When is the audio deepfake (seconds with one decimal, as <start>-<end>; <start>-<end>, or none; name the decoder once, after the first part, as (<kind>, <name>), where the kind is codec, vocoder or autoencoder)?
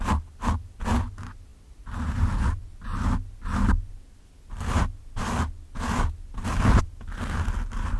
none